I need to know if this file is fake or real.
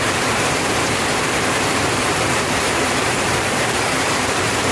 fake